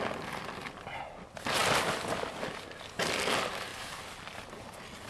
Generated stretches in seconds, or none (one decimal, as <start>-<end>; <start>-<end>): none